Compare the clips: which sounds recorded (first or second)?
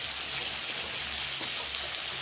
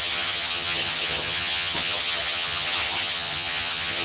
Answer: first